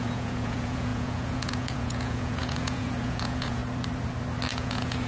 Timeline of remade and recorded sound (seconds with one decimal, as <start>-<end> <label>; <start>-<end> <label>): 0.0-3.6 remade; 3.6-4.5 recorded; 4.5-5.1 remade